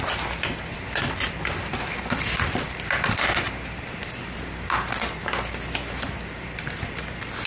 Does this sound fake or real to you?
real